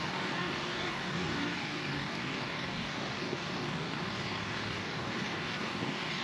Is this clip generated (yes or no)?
yes